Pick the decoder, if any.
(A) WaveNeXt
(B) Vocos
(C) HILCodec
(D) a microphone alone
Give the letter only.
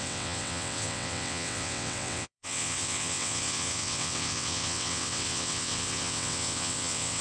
A